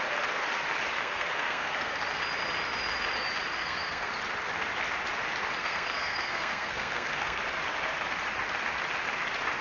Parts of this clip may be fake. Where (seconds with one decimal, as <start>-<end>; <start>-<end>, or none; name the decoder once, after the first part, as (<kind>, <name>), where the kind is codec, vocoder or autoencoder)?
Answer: 1.0-2.0 (codec, SNAC); 3.6-4.1; 5.6-7.4